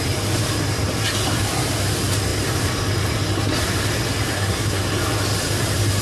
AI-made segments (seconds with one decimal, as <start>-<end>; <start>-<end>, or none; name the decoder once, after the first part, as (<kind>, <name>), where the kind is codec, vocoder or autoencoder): 4.3-4.8 (codec, SNAC)